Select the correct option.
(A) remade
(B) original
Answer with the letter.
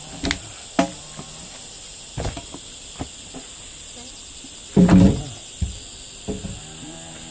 B